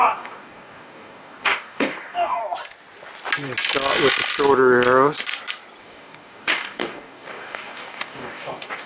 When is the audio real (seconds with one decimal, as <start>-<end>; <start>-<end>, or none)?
2.4-5.8